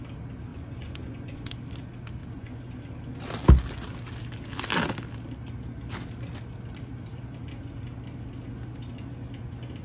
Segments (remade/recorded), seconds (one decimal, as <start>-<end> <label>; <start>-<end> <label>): 0.0-0.5 recorded; 0.5-1.5 remade; 1.5-2.2 recorded; 2.2-2.8 remade; 2.8-9.8 recorded